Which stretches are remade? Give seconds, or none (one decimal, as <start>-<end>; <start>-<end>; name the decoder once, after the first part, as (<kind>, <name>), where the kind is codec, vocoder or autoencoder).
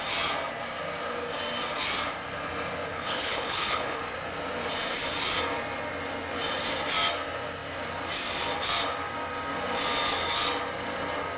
2.9-4.0 (codec, HILCodec)